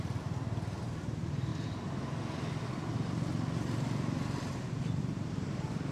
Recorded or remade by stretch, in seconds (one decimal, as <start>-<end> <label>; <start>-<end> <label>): 0.0-1.5 remade; 1.5-5.0 recorded; 5.0-5.9 remade